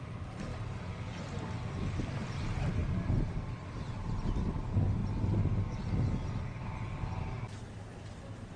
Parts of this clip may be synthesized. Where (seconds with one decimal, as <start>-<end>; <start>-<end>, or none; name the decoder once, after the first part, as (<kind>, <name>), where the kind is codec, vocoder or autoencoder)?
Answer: none